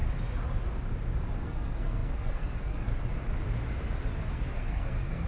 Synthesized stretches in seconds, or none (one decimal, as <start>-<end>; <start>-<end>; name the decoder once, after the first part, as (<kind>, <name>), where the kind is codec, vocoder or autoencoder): 1.4-2.9 (codec, SNAC); 4.3-5.3